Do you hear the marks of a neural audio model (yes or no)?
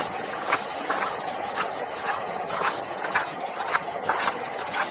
yes